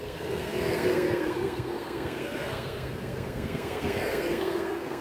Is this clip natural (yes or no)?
no